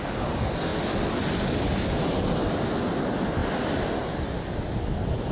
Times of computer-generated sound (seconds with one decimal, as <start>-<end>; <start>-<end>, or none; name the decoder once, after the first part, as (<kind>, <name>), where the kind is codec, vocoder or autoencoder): none